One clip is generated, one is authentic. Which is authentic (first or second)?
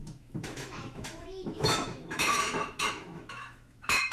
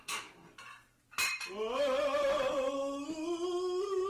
second